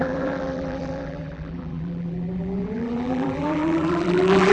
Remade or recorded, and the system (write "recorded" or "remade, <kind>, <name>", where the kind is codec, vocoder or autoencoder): remade, vocoder, BigVGAN v2